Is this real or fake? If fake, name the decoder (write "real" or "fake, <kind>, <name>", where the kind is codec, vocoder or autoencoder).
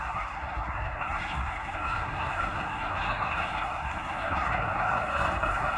fake, codec, SNAC